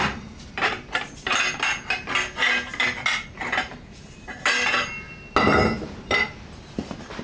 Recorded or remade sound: recorded